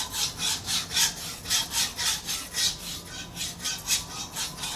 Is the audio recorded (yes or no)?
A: yes